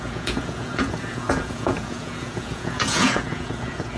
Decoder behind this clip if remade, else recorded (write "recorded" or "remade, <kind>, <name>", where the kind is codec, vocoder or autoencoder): remade, vocoder, Vocos